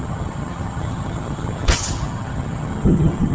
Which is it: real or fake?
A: fake